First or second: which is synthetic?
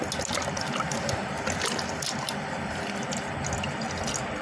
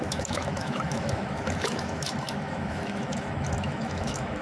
second